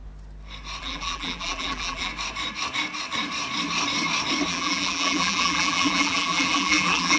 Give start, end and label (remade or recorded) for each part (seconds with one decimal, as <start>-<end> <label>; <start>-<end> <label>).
0.0-0.8 recorded; 0.8-2.1 remade; 2.1-4.5 recorded; 4.5-7.2 remade

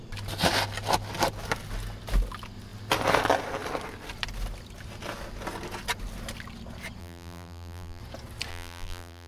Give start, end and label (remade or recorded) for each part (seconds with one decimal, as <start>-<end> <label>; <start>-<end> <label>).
0.0-7.0 recorded; 7.0-8.0 remade; 8.0-8.5 recorded; 8.5-9.3 remade

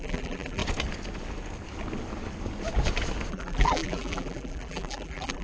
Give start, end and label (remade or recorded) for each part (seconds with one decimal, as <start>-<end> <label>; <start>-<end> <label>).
0.0-0.6 remade; 0.6-3.3 recorded; 3.3-5.4 remade

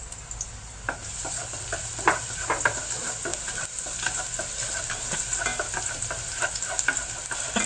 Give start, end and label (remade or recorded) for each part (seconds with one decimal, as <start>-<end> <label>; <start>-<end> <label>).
0.0-1.1 recorded; 1.1-2.8 remade; 2.8-3.3 recorded; 3.3-4.8 remade; 4.8-7.7 recorded